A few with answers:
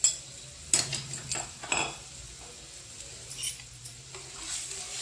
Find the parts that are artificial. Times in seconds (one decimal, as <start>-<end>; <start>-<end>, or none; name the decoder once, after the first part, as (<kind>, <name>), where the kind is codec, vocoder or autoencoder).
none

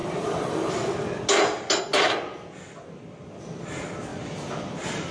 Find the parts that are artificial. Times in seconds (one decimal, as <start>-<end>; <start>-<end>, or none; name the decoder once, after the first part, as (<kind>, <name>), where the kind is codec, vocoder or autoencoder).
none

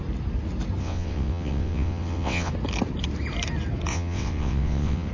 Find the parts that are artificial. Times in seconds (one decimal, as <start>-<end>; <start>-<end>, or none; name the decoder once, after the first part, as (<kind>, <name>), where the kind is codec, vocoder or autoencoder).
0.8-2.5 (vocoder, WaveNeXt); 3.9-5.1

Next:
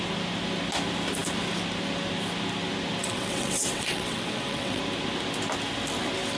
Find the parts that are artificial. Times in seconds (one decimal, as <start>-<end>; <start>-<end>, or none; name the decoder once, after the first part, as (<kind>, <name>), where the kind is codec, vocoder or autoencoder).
3.0-4.8 (vocoder, WaveNeXt)

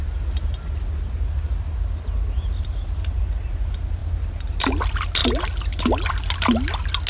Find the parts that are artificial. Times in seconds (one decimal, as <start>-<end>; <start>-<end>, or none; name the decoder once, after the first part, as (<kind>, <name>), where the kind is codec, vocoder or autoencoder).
none